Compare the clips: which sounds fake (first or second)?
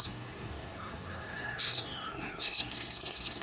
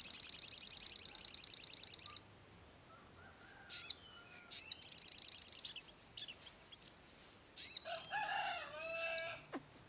first